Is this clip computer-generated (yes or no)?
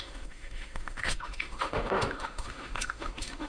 yes